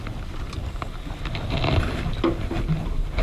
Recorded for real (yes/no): yes